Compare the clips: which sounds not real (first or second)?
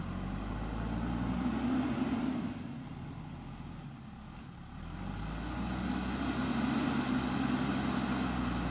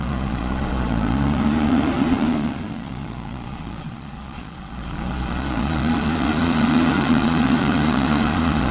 second